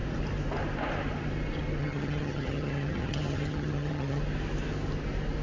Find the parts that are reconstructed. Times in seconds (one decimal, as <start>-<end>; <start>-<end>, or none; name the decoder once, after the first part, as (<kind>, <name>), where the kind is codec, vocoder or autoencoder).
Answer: 1.8-4.2 (vocoder, HiFi-GAN)